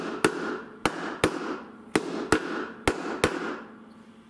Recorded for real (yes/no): yes